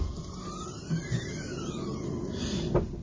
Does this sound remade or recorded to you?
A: recorded